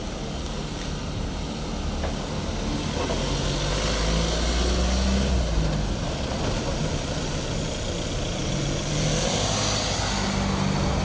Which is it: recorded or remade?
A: recorded